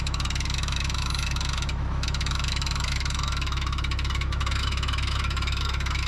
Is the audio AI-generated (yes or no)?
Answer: yes